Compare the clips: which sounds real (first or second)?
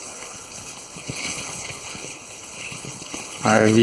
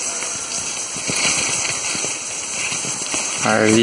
second